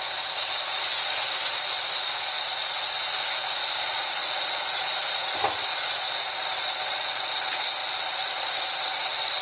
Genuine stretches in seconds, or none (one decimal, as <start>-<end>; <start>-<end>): 0.0-7.8; 9.0-9.4